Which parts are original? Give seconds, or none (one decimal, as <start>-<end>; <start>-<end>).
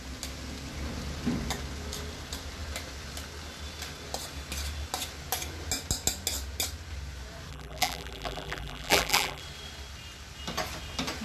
0.0-7.5; 9.4-11.2